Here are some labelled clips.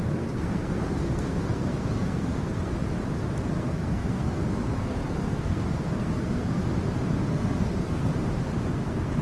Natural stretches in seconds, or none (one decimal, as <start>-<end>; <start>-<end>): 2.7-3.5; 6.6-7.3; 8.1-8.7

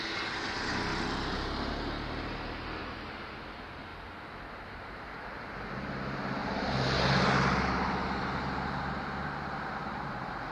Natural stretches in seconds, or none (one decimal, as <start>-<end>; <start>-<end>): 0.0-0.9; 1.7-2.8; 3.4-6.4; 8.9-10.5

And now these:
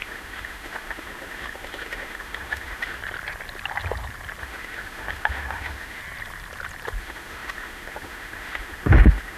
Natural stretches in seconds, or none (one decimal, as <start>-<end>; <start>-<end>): 3.0-4.4; 6.0-7.0